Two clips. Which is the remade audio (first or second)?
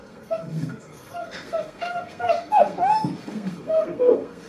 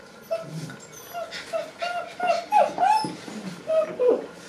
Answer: first